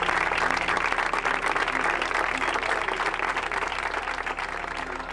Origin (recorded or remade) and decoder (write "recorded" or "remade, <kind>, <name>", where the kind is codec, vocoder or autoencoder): recorded